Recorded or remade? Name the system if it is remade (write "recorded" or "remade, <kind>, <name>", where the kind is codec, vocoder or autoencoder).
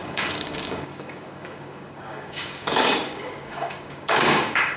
remade, codec, DAC